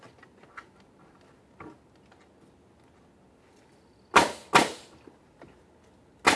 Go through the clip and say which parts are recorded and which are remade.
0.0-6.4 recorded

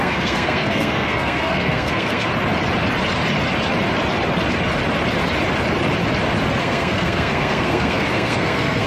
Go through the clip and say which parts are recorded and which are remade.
0.0-2.3 remade; 2.3-6.6 recorded; 6.6-8.9 remade

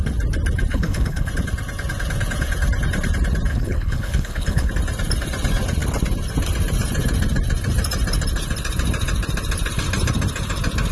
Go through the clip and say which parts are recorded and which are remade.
0.0-0.7 recorded; 0.7-1.3 remade; 1.3-3.5 recorded; 3.5-4.7 remade; 4.7-10.9 recorded

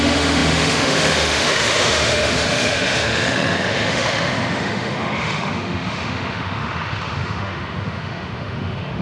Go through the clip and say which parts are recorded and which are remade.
0.0-9.0 remade

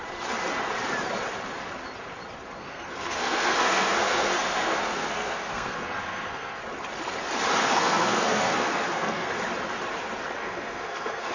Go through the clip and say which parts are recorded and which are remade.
0.0-2.6 recorded; 2.6-6.6 remade; 6.6-7.6 recorded; 7.6-9.3 remade; 9.3-10.4 recorded; 10.4-11.3 remade

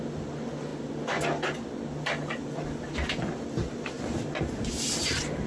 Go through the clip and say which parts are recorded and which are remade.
0.0-5.5 recorded

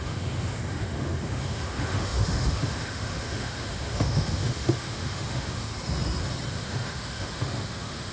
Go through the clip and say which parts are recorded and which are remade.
0.0-5.7 remade; 5.7-6.5 recorded; 6.5-8.1 remade